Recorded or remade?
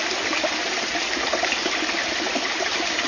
recorded